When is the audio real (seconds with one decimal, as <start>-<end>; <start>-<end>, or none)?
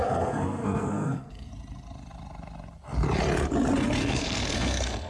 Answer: 1.5-4.0